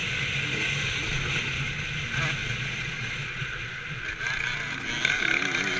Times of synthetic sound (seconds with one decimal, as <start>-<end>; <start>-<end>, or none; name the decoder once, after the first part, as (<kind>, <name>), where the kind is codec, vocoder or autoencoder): 2.4-4.0 (vocoder, Vocos)